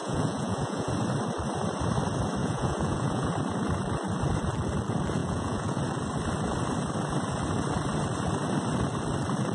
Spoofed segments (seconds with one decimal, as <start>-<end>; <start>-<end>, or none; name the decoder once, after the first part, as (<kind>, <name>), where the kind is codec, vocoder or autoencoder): 0.0-0.9 (vocoder, Vocos); 2.4-3.3; 5.2-5.8